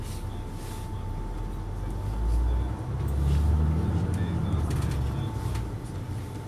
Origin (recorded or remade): recorded